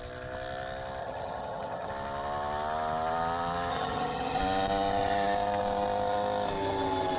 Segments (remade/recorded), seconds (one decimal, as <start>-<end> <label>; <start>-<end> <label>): 0.0-1.0 recorded; 1.0-1.9 remade; 1.9-3.7 recorded; 3.7-4.4 remade; 4.4-7.2 recorded